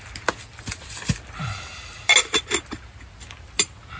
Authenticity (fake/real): real